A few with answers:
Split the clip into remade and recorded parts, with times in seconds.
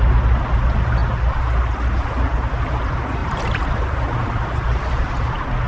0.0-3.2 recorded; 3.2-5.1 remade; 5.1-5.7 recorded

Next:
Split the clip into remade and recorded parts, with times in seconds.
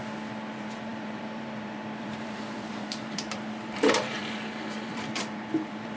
0.0-0.5 recorded; 0.5-6.0 remade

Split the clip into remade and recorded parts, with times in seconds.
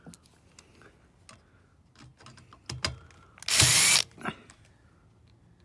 0.0-5.6 recorded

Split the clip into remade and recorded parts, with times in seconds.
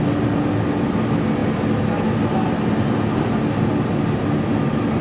0.0-5.0 recorded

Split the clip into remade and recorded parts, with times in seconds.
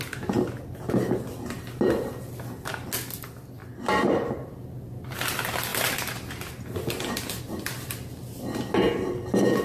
0.0-5.7 recorded; 5.7-7.4 remade; 7.4-9.6 recorded